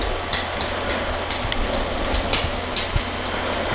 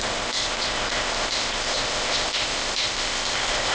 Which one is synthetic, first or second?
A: second